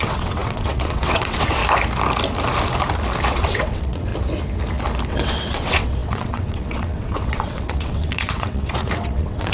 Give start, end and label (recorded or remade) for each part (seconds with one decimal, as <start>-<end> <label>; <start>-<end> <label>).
0.0-1.6 remade; 1.6-3.3 recorded; 3.3-4.1 remade; 4.1-5.1 recorded; 5.1-9.5 remade